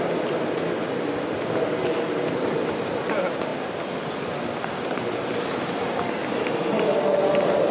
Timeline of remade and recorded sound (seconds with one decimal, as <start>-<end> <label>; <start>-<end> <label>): 0.0-7.7 recorded